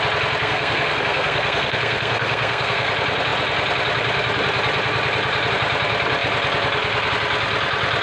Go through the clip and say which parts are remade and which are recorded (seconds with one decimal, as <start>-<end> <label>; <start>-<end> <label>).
0.0-0.4 recorded; 0.4-2.9 remade; 2.9-8.0 recorded